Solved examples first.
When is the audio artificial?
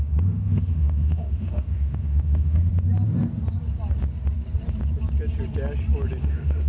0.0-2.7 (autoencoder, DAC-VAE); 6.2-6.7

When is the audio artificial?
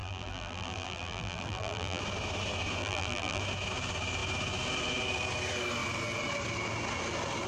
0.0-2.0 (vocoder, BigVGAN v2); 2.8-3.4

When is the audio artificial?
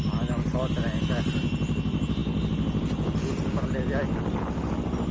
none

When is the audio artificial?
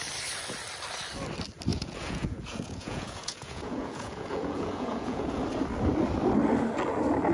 1.7-5.4 (vocoder, Vocos)